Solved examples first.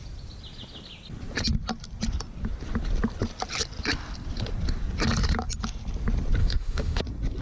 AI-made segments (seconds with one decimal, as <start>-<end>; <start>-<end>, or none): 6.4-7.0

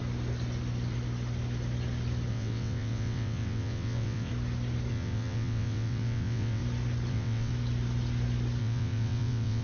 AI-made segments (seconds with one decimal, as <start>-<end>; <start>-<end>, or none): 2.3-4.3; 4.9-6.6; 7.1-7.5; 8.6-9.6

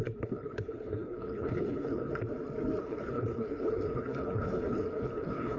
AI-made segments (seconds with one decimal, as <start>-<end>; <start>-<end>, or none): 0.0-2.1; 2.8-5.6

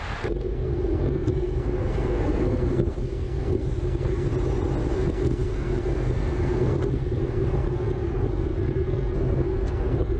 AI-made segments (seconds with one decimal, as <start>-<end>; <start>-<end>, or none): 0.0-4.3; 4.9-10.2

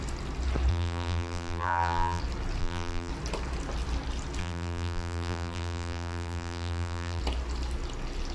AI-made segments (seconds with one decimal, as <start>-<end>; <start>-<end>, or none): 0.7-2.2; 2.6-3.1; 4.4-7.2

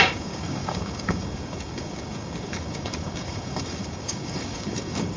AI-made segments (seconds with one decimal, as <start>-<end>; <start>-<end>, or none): 0.0-5.2

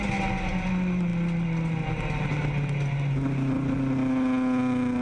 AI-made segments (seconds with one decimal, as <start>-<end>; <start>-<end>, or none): none

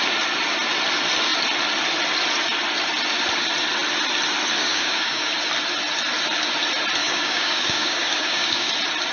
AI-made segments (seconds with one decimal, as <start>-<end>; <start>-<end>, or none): 4.6-5.3; 7.0-8.7